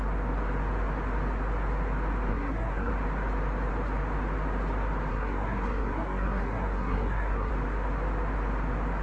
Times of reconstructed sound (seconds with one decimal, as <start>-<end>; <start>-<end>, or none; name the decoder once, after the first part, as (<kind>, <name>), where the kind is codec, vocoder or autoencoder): 2.3-2.9 (codec, SNAC); 5.1-7.5